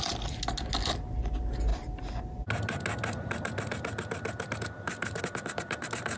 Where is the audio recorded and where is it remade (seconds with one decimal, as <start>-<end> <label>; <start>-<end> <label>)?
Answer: 0.0-6.2 recorded